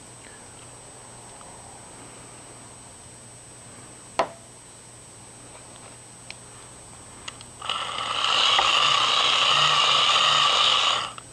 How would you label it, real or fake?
real